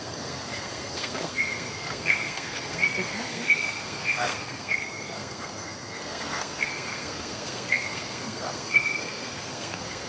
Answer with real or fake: fake